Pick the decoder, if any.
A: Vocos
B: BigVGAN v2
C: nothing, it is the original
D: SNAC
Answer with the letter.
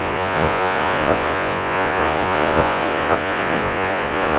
A